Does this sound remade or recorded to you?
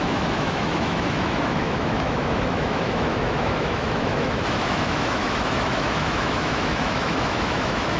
remade